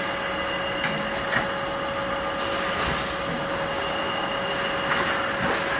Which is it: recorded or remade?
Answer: recorded